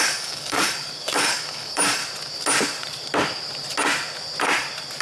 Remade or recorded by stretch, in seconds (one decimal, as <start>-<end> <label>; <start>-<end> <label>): 0.0-2.0 remade; 2.0-5.0 recorded